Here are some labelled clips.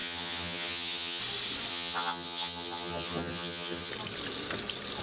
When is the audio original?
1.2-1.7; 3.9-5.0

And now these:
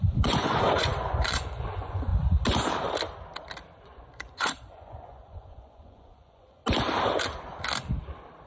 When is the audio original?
2.1-3.8; 6.6-8.5

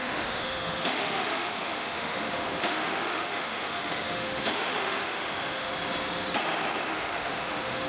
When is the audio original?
5.7-6.9

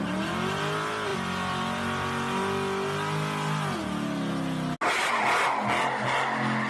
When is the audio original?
0.0-6.7

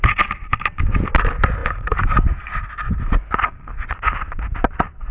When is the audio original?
0.0-5.1